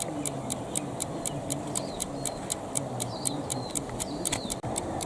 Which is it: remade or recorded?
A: recorded